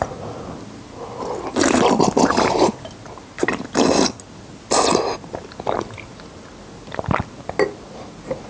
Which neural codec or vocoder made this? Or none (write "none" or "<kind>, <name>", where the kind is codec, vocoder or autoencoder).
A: none